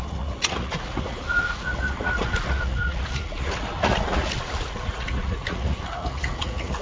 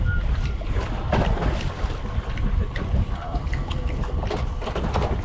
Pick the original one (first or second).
second